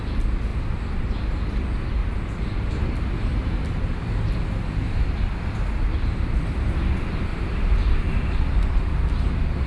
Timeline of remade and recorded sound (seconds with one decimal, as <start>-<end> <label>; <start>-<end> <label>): 0.0-2.0 recorded; 2.0-5.0 remade; 5.0-7.3 recorded; 7.3-8.0 remade; 8.0-9.7 recorded